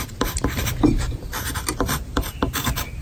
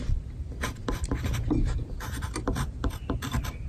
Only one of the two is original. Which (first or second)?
second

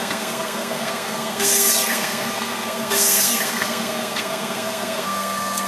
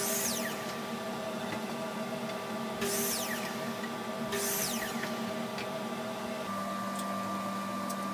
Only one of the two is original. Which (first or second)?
second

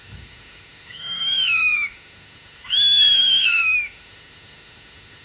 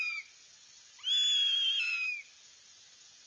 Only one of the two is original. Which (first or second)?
second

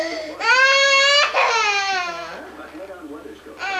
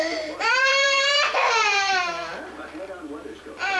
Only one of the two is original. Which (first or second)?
first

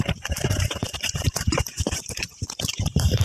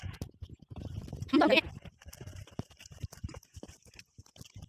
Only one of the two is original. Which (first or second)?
second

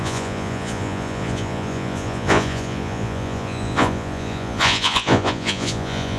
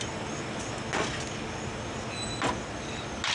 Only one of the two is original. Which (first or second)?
second